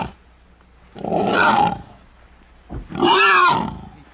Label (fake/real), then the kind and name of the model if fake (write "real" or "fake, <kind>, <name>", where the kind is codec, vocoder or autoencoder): real